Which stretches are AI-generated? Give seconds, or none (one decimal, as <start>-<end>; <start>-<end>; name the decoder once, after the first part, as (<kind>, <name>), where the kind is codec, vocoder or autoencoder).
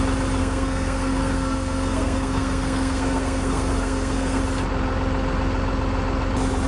0.4-4.4 (codec, SNAC)